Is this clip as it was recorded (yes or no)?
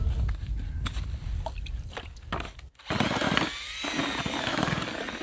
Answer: yes